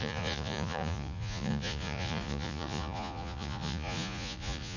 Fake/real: fake